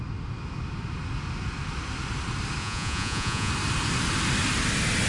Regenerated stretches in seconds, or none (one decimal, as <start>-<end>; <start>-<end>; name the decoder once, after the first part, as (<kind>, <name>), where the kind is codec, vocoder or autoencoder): 2.6-3.5 (vocoder, Vocos)

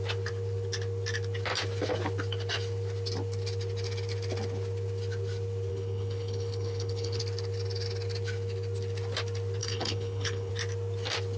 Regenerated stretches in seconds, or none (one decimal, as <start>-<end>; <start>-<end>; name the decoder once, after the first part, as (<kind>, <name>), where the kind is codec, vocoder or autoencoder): 5.7-7.2 (codec, HILCodec); 9.6-10.5

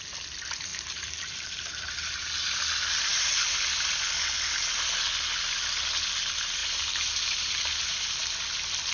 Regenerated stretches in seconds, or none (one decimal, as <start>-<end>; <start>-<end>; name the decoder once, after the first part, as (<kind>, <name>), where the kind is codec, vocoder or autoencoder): 0.7-2.3 (vocoder, BigVGAN v2); 6.6-8.4

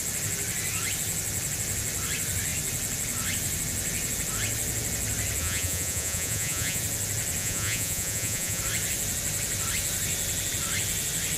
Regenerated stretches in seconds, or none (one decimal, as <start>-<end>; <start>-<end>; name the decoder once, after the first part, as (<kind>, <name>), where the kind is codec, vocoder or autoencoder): 5.4-6.8 (vocoder, Vocos); 7.4-8.6

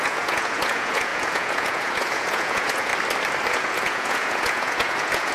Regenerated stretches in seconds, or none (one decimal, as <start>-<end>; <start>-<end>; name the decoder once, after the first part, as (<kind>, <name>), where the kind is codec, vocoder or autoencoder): 0.0-2.9 (vocoder, Vocos); 3.5-5.3

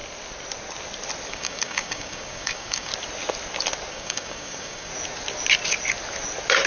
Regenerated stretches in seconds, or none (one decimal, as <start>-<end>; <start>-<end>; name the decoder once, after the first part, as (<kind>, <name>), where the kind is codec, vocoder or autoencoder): 1.3-2.9 (codec, DAC); 3.9-4.9

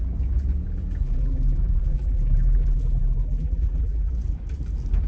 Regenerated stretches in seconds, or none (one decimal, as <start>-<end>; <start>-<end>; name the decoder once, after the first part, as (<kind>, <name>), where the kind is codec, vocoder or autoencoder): 1.0-4.1 (vocoder, BigVGAN v2)

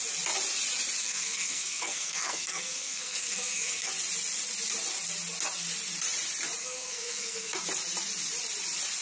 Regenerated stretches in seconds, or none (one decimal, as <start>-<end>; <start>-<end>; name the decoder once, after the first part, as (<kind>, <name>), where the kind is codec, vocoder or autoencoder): 1.0-3.9 (codec, SNAC); 6.6-7.6